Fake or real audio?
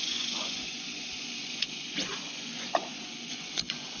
fake